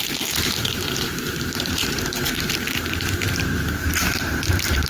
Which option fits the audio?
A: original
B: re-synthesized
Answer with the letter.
B